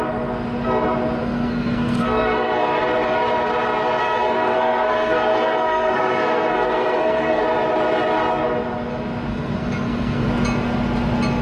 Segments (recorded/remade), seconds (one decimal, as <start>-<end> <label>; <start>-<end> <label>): 0.0-1.2 recorded; 1.2-2.8 remade; 2.8-4.0 recorded; 4.0-7.4 remade; 7.4-9.3 recorded; 9.3-10.3 remade; 10.3-11.4 recorded